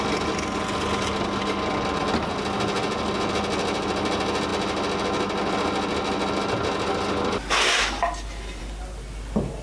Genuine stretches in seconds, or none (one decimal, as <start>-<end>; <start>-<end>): 0.0-9.6